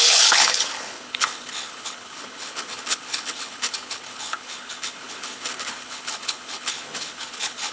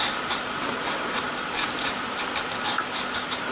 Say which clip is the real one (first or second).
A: second